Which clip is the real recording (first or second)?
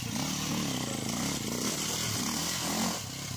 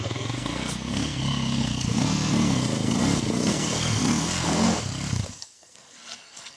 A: first